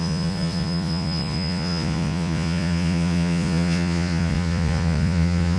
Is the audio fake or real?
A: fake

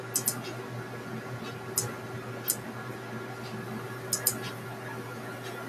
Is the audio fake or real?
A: real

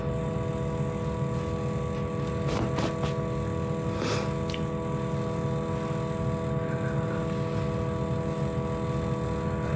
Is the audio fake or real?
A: real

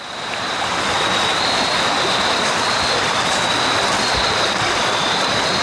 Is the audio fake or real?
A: fake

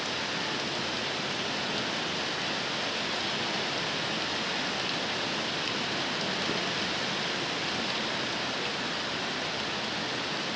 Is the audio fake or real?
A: real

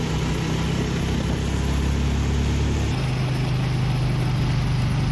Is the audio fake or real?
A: real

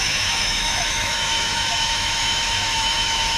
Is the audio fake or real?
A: fake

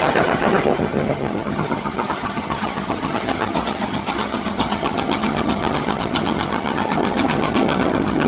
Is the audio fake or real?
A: fake